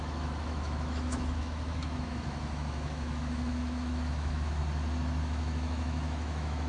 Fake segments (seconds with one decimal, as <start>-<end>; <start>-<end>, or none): 0.0-4.6; 5.2-6.7